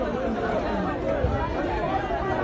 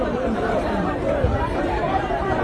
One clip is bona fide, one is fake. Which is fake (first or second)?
second